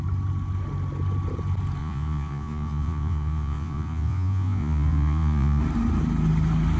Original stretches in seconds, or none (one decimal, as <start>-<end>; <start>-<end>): 0.0-1.8; 5.6-6.8